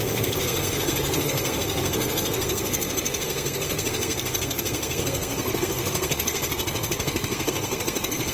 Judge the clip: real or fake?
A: fake